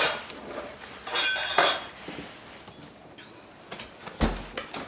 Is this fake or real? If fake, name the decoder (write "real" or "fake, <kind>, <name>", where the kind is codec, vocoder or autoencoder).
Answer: real